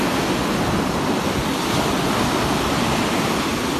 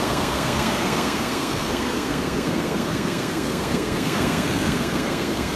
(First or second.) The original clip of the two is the first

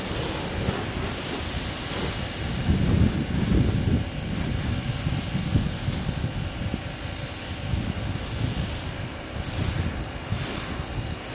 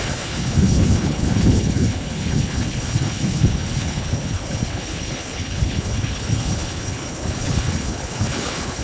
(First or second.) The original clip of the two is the first